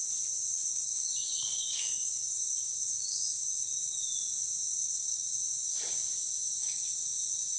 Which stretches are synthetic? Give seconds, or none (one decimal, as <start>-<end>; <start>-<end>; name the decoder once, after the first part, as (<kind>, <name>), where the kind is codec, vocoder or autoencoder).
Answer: 0.5-4.0 (codec, DAC); 4.6-5.4; 6.6-7.6